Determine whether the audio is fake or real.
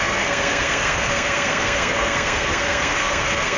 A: fake